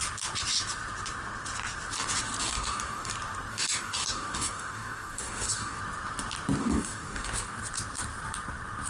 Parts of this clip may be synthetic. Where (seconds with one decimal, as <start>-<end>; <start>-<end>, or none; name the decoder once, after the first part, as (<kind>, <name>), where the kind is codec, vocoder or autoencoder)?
2.4-3.1 (codec, DAC); 3.5-5.8; 6.6-7.6